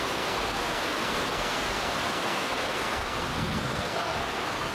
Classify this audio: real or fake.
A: fake